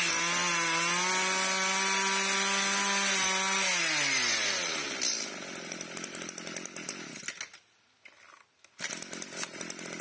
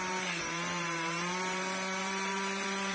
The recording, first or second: first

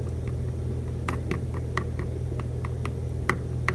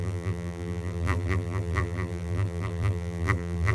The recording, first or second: first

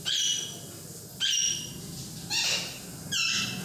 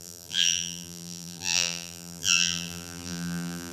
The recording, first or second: first